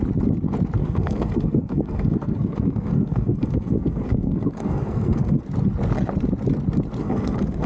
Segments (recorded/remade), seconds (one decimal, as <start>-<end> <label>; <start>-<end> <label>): 0.0-0.8 recorded; 0.8-5.4 remade; 5.4-7.0 recorded; 7.0-7.7 remade